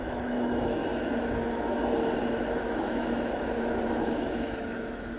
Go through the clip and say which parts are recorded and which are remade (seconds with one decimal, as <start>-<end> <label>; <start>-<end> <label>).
0.0-0.8 remade; 0.8-2.8 recorded; 2.8-5.2 remade